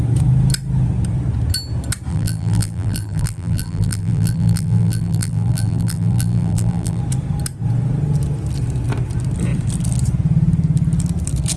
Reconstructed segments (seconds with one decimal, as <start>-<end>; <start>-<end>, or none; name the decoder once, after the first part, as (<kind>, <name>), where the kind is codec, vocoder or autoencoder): 2.1-7.0 (vocoder, BigVGAN v2)